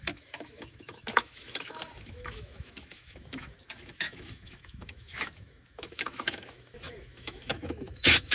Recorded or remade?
remade